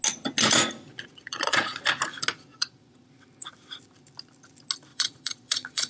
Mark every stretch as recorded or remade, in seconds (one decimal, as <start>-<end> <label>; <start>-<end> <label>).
0.0-0.9 recorded; 0.9-1.8 remade; 1.8-2.5 recorded; 2.5-3.1 remade; 3.1-4.9 recorded; 4.9-5.9 remade

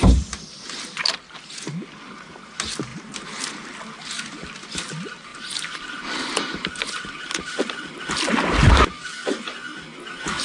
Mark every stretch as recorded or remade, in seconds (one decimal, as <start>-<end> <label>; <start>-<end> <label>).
0.0-10.4 recorded

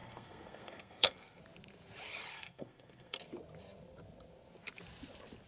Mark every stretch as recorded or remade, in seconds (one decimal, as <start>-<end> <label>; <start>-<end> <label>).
0.0-1.4 remade; 1.4-2.3 recorded; 2.3-3.2 remade; 3.2-5.5 recorded

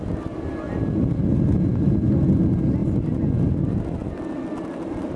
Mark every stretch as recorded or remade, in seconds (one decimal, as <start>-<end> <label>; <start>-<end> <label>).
0.0-5.2 recorded

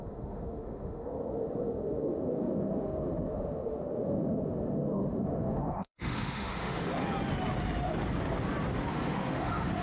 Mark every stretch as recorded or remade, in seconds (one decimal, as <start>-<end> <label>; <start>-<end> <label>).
0.0-6.9 remade; 6.9-8.9 recorded; 8.9-9.8 remade

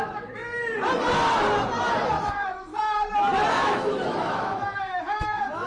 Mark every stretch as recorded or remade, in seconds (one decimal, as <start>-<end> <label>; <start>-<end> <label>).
0.0-0.4 remade; 0.4-2.3 recorded; 2.3-2.7 remade; 2.7-3.5 recorded; 3.5-5.7 remade